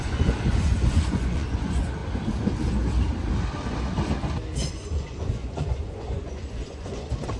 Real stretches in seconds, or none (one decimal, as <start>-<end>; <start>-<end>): 2.0-4.7